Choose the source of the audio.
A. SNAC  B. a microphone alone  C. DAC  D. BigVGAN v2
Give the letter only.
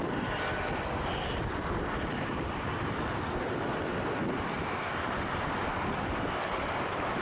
D